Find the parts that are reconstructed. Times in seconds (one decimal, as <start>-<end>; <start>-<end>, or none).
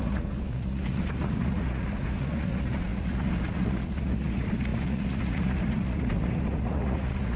0.0-7.4